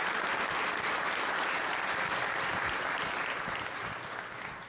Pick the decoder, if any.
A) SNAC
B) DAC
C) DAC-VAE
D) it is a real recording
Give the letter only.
D